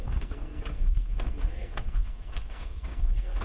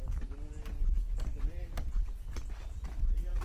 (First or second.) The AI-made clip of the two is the first